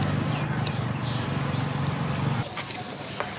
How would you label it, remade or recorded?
recorded